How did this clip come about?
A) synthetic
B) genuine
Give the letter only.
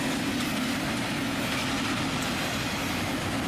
B